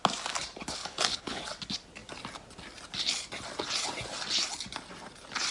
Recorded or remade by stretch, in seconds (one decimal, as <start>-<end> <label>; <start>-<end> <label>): 0.0-0.8 recorded; 0.8-1.4 remade; 1.4-5.5 recorded